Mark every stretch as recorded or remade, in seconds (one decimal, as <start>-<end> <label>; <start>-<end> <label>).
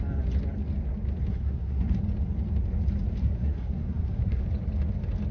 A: 0.0-1.3 recorded; 1.3-2.0 remade; 2.0-3.2 recorded; 3.2-4.4 remade; 4.4-5.3 recorded